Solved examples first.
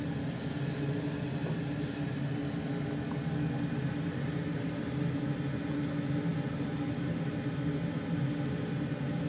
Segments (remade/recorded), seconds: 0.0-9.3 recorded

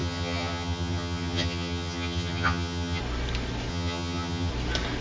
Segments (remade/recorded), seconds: 0.0-3.0 remade; 3.0-3.7 recorded; 3.7-4.5 remade; 4.5-5.0 recorded